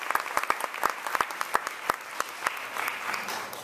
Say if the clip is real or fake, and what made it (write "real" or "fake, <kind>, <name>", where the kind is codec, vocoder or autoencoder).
real